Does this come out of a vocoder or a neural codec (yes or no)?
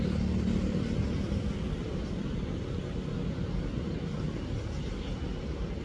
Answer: no